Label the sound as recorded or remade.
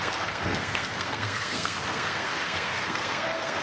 remade